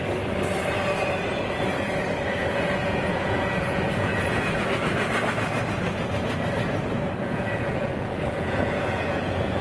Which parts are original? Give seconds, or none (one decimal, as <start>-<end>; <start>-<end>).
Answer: 0.0-2.4; 4.6-7.2